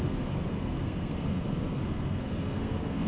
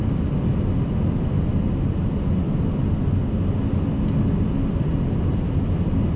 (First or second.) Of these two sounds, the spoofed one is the first